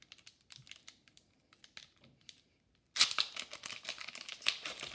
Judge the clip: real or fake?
real